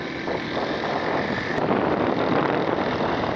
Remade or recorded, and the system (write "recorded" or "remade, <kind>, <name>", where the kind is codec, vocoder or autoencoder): recorded